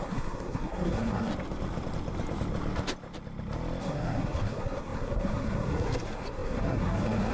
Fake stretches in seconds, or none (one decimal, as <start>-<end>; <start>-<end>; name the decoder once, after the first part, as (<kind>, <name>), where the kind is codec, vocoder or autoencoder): 0.0-1.3 (codec, SNAC); 3.8-7.3